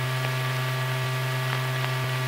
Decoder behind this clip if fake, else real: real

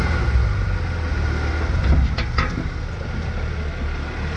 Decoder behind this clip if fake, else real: real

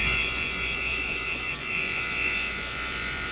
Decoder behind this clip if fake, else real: fake, vocoder, Vocos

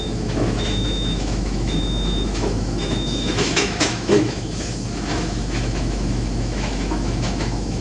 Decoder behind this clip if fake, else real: fake, autoencoder, DAC-VAE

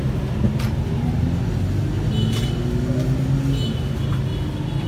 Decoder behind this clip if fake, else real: real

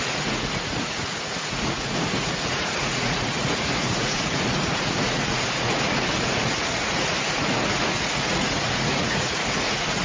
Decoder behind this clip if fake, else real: fake, vocoder, Vocos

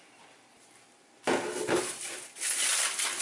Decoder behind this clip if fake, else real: real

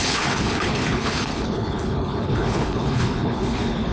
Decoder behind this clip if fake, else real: fake, codec, HILCodec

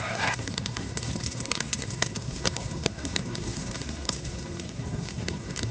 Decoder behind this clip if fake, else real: fake, codec, SNAC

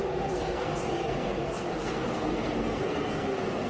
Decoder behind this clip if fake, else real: fake, codec, SNAC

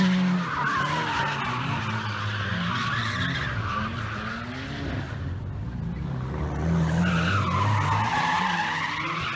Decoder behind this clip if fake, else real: real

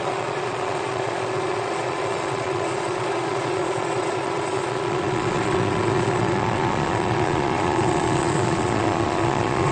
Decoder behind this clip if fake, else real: fake, vocoder, Vocos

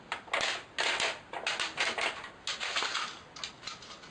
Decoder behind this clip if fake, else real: real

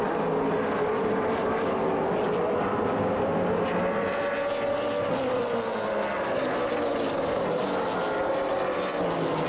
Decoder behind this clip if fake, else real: real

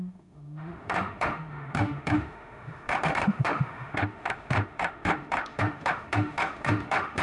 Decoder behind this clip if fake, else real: fake, autoencoder, DAC-VAE